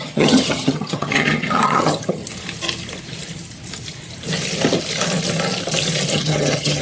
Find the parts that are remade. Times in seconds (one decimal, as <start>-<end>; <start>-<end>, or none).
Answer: 0.0-2.2; 6.1-6.8